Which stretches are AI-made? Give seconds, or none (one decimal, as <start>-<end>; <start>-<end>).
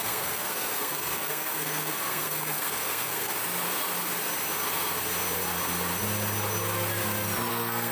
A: 0.0-3.3; 7.5-7.9